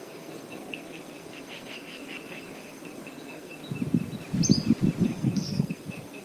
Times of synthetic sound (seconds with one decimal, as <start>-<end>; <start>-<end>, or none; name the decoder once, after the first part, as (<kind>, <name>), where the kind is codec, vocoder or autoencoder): 0.0-3.6 (codec, SNAC); 5.0-6.2